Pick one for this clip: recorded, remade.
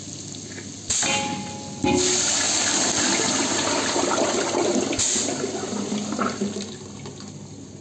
recorded